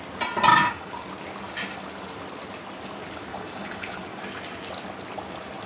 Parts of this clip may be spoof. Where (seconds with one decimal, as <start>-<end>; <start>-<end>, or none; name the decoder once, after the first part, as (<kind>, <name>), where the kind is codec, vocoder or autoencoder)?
0.5-1.1 (codec, DAC); 3.3-4.2